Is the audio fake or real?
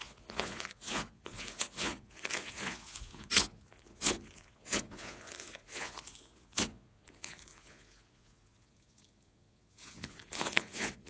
fake